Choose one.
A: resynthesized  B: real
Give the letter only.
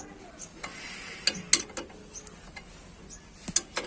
B